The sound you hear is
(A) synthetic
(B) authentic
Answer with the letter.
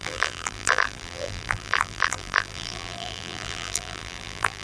A